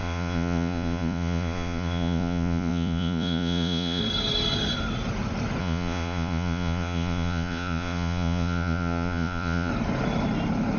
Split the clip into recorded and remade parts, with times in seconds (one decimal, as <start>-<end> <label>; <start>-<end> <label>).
0.0-4.0 remade; 4.0-5.6 recorded; 5.6-9.7 remade; 9.7-10.8 recorded